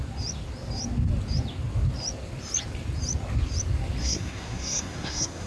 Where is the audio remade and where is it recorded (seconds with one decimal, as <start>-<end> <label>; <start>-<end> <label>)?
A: 0.0-4.0 recorded; 4.0-5.5 remade